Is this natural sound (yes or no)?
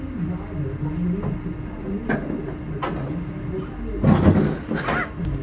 yes